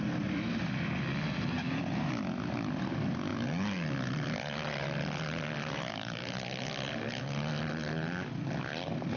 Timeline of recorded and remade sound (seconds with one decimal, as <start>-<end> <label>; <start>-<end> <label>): 0.0-9.2 recorded

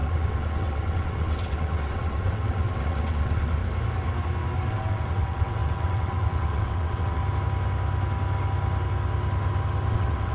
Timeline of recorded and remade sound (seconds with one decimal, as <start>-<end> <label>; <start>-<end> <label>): 0.0-3.6 remade; 3.6-4.7 recorded; 4.7-7.2 remade; 7.2-9.9 recorded; 9.9-10.3 remade